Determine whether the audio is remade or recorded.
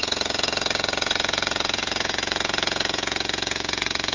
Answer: remade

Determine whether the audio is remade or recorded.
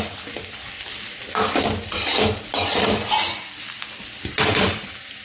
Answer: recorded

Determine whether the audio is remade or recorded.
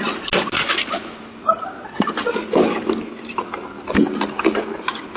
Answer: recorded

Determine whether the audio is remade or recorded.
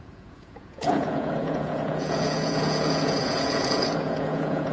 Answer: remade